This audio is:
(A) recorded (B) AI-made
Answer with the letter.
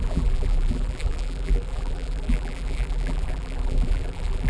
B